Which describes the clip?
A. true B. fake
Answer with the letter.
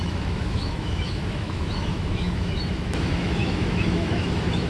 B